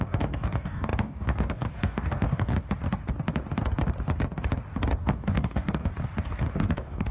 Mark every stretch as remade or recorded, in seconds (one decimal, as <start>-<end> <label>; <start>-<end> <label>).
0.0-2.5 remade; 2.5-5.0 recorded; 5.0-5.9 remade; 5.9-6.5 recorded; 6.5-7.1 remade